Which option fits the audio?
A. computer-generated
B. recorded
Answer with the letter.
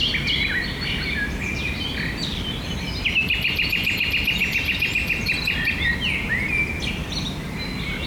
B